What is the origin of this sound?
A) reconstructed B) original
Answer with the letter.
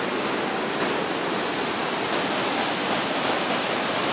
B